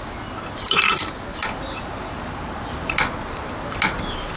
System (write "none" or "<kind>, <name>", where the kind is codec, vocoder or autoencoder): none